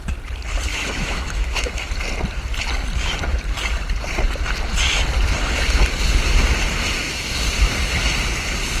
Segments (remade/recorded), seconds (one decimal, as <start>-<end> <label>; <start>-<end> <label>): 0.0-0.7 recorded; 0.7-1.9 remade; 1.9-8.8 recorded